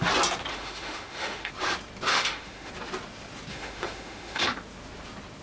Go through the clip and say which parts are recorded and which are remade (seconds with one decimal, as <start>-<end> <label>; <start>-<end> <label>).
0.0-0.5 recorded; 0.5-1.5 remade; 1.5-2.1 recorded; 2.1-2.7 remade; 2.7-3.5 recorded; 3.5-4.4 remade; 4.4-5.4 recorded